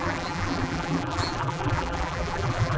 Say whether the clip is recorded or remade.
remade